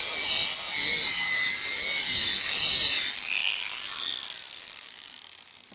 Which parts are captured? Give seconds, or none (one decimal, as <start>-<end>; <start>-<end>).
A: 0.0-5.7